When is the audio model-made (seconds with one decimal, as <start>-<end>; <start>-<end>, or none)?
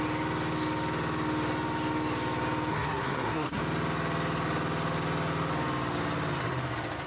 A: 2.7-3.6